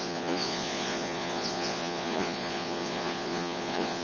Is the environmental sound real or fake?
fake